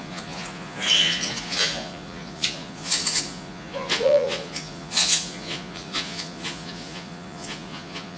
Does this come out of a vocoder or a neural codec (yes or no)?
yes